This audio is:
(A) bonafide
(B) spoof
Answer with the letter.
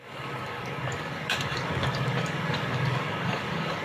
B